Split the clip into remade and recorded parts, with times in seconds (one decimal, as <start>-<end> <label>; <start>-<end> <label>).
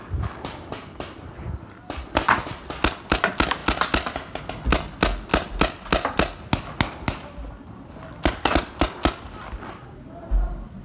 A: 0.0-10.8 recorded